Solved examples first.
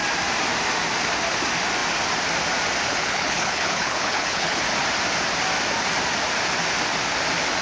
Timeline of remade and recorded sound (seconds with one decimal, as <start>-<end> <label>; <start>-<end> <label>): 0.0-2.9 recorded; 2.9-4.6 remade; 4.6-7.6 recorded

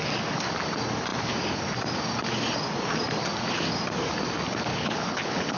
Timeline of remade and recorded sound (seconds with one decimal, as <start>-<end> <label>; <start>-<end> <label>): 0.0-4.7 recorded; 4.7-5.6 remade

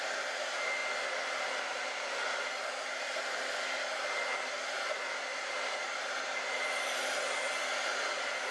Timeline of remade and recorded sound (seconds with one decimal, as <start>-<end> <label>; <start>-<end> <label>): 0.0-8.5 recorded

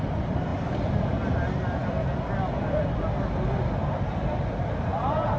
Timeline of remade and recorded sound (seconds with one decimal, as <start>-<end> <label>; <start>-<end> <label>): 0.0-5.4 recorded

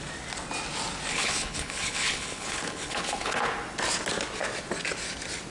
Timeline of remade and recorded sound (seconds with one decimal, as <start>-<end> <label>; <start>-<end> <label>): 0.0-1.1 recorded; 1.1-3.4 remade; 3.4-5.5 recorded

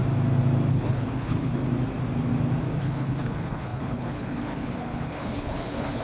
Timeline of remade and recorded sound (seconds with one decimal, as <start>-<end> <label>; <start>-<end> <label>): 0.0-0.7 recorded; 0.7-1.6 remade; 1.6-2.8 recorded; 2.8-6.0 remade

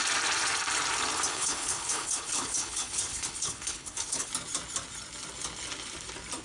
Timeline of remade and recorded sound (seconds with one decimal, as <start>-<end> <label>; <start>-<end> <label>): 0.0-1.3 recorded; 1.3-4.3 remade; 4.3-6.4 recorded

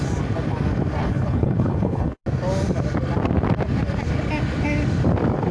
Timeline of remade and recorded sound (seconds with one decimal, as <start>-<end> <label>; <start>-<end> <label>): 0.0-1.0 recorded; 1.0-2.2 remade; 2.2-5.5 recorded